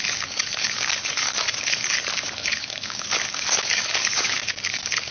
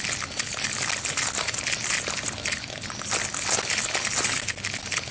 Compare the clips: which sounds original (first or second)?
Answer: second